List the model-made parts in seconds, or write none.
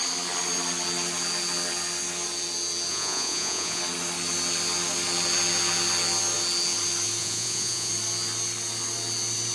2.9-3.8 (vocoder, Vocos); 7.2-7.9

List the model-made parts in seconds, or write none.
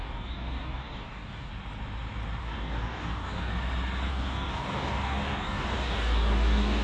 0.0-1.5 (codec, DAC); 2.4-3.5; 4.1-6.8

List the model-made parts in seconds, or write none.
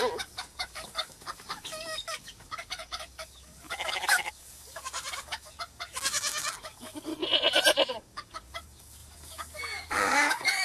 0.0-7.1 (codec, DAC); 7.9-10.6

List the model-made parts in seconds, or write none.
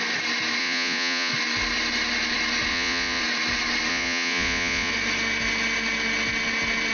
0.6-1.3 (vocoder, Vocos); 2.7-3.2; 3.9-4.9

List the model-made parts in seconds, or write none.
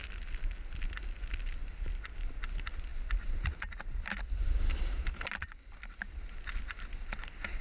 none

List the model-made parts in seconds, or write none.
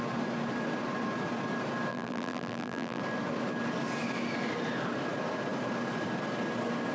1.9-3.0 (vocoder, BigVGAN v2)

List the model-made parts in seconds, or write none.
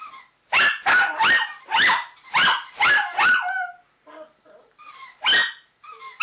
none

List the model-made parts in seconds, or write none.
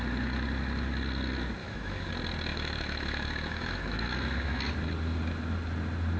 1.6-2.1 (autoencoder, DAC-VAE); 2.5-4.6